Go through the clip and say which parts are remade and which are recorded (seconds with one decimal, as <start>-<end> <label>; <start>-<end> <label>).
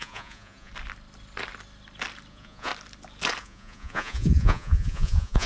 0.0-0.7 remade; 0.7-2.3 recorded; 2.3-2.7 remade; 2.7-3.4 recorded; 3.4-5.5 remade